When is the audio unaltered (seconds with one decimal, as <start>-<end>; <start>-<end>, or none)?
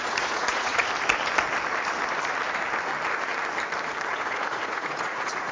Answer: 0.8-4.1